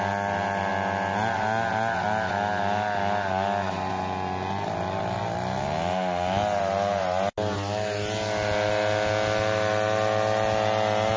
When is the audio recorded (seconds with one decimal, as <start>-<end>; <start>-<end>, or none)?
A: 0.0-11.2

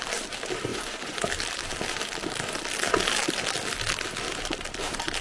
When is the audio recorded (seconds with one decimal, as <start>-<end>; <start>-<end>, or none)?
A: 0.0-0.7; 1.2-5.2

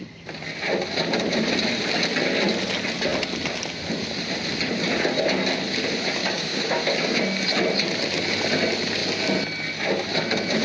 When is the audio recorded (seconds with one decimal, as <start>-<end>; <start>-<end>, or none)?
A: 0.0-6.2; 6.8-10.6

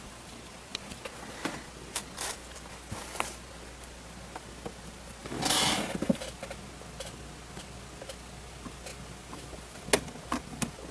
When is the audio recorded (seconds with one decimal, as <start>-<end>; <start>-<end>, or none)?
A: 0.0-10.9

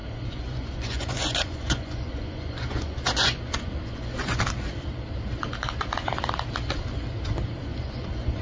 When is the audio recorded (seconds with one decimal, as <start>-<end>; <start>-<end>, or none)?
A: 4.4-7.6